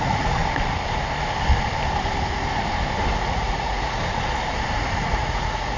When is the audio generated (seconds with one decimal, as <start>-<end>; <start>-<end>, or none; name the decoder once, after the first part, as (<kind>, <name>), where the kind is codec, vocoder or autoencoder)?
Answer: 0.0-0.4 (vocoder, Vocos); 3.2-4.0; 5.0-5.8